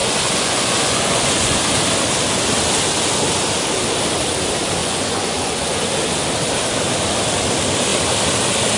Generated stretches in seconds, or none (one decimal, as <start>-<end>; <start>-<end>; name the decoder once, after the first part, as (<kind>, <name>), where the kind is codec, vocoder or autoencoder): 0.0-1.6 (vocoder, Vocos); 4.8-5.8